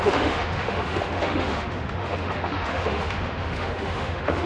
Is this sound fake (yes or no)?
yes